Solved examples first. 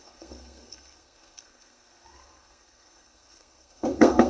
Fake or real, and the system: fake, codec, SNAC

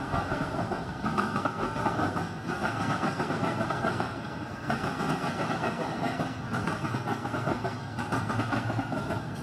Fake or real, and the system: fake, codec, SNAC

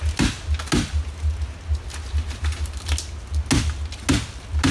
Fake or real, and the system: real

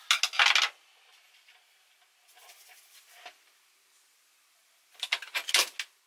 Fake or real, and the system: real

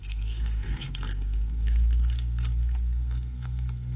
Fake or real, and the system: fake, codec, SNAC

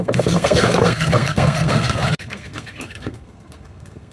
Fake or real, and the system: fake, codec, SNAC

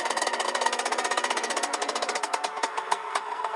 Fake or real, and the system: fake, codec, SNAC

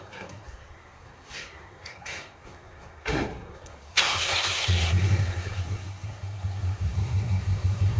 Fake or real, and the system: fake, codec, SNAC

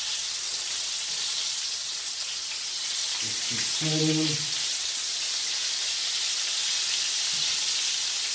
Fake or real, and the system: real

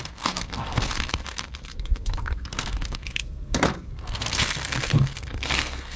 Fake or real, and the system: fake, codec, SNAC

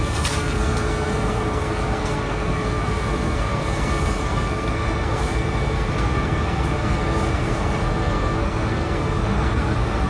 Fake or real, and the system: fake, codec, SNAC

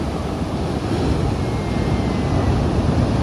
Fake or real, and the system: real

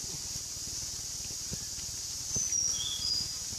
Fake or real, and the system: real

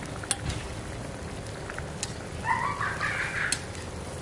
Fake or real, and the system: real